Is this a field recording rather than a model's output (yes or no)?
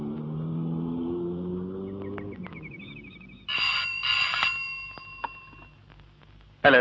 yes